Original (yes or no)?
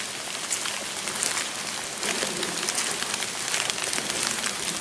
yes